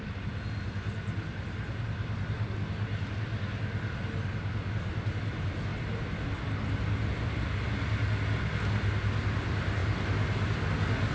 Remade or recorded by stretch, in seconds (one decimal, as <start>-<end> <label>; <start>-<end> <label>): 0.0-11.1 recorded